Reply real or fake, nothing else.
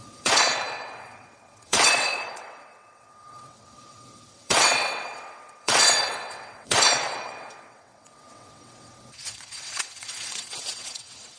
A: fake